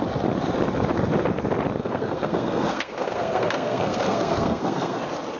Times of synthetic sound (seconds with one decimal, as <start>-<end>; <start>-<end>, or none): 1.8-5.0